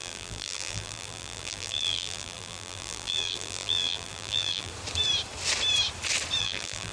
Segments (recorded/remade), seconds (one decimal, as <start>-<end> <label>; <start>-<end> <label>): 0.0-4.7 remade; 4.7-6.4 recorded; 6.4-6.9 remade